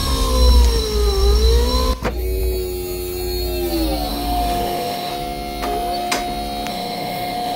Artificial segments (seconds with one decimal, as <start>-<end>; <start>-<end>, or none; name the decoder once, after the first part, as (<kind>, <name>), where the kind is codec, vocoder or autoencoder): 4.1-5.1 (autoencoder, DAC-VAE); 6.7-7.6